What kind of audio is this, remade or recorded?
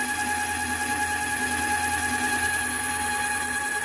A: recorded